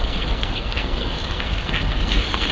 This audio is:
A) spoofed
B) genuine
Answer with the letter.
A